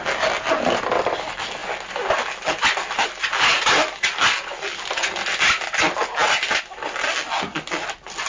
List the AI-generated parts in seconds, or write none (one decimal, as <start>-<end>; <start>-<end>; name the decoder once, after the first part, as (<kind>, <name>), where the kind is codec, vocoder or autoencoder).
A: none